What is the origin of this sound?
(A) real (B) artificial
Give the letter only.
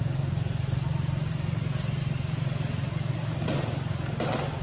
A